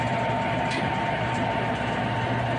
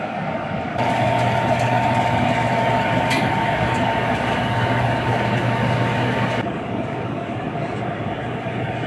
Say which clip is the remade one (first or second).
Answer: second